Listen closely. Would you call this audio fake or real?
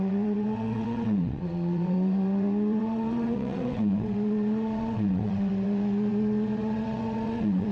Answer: fake